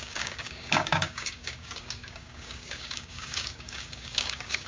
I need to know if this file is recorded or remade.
remade